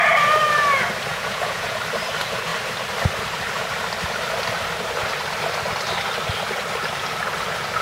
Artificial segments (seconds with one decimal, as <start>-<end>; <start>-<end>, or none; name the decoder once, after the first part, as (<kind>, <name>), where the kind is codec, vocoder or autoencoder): 1.1-1.8 (vocoder, Vocos)